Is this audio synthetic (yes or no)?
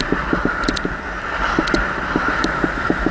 yes